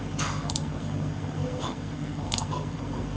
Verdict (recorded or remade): remade